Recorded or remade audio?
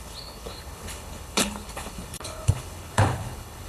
remade